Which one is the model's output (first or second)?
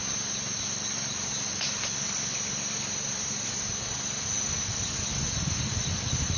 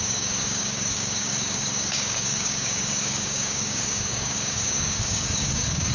second